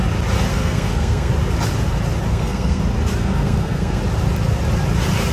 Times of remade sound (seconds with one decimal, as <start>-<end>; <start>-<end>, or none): 0.5-1.3; 2.3-2.8; 3.2-4.0